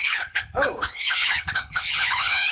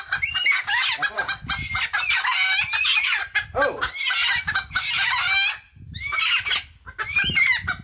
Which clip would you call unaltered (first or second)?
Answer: second